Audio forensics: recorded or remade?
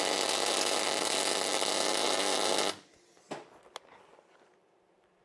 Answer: recorded